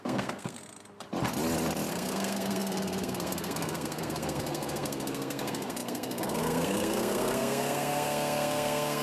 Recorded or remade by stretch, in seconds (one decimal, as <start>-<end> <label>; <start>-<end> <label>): 0.0-0.6 remade; 0.6-1.9 recorded; 1.9-9.0 remade